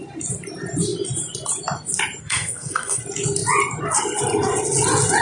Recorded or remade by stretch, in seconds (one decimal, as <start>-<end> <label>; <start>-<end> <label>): 0.0-2.2 recorded; 2.2-3.0 remade; 3.0-5.2 recorded